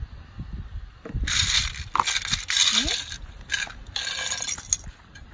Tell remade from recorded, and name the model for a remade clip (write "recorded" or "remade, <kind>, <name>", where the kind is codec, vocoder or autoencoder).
recorded